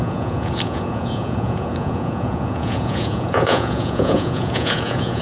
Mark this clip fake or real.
fake